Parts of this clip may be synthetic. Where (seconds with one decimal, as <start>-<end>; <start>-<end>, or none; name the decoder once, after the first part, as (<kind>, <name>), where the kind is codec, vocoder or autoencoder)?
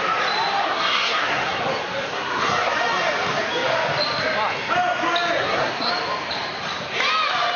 0.6-1.6 (codec, SNAC); 2.1-2.7; 5.4-5.9